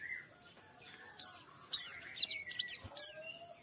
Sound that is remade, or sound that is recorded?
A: recorded